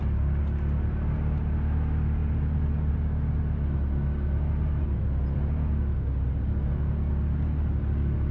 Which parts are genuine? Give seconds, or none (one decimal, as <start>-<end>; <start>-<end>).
0.0-8.3